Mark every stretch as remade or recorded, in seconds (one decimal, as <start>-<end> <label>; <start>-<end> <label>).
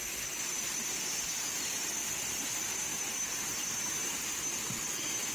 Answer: 0.0-2.9 recorded; 2.9-3.7 remade; 3.7-5.3 recorded